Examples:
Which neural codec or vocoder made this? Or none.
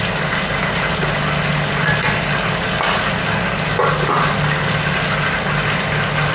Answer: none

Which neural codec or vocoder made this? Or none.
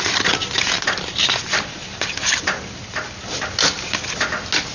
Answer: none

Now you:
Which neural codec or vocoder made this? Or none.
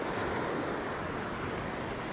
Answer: none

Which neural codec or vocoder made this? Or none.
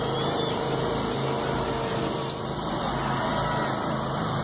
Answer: none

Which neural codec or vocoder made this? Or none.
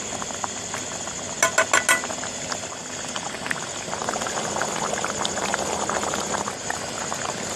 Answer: none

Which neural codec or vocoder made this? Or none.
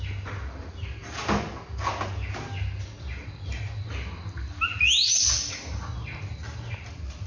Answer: none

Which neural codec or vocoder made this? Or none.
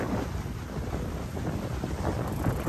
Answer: none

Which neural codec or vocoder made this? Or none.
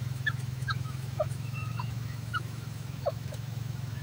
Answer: autoencoder, DAC-VAE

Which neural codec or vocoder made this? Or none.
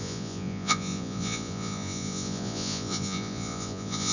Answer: vocoder, Vocos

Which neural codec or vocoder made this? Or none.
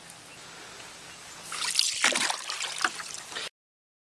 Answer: none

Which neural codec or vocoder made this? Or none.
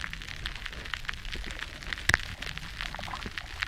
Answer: none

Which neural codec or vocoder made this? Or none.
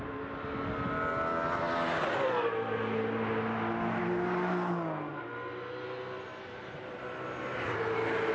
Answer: none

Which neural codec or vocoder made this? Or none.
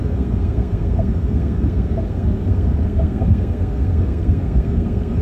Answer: codec, SNAC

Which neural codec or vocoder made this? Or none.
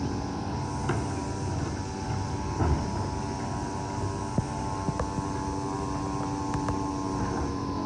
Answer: none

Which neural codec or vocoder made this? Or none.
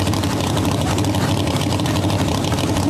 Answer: vocoder, BigVGAN v2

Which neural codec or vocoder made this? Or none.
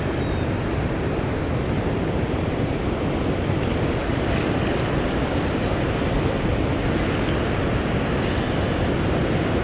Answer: none